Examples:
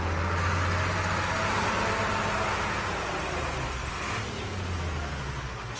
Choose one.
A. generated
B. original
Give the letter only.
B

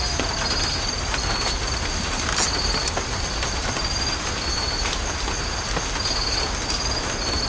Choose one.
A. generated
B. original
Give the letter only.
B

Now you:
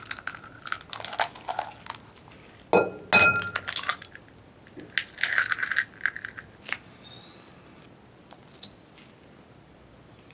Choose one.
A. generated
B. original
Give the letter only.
B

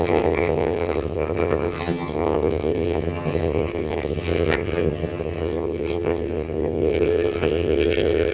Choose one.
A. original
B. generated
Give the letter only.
B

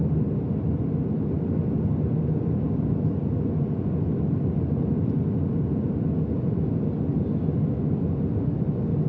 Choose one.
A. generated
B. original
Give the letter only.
B